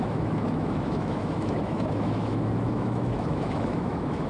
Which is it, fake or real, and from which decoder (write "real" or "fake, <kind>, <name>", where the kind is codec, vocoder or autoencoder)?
fake, autoencoder, DAC-VAE